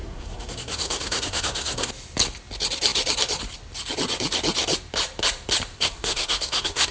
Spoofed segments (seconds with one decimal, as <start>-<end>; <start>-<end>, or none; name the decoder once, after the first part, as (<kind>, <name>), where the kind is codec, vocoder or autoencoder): 0.0-1.9 (codec, SNAC); 5.7-6.9